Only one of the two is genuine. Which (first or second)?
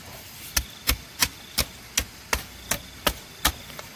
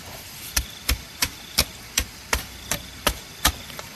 first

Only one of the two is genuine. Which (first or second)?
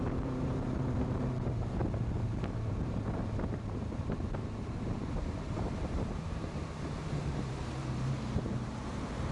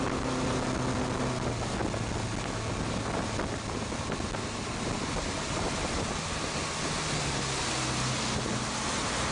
second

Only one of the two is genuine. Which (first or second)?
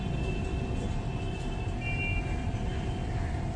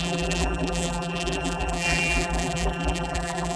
first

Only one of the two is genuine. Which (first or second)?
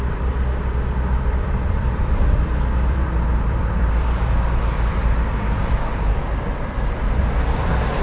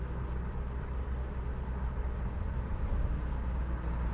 second